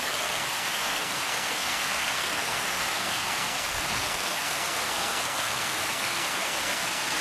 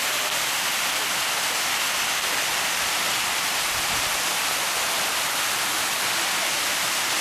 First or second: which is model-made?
first